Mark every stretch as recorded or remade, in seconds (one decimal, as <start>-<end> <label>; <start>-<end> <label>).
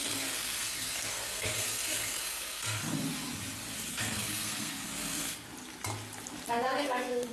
0.0-2.8 remade; 2.8-3.9 recorded; 3.9-5.5 remade; 5.5-6.5 recorded; 6.5-7.3 remade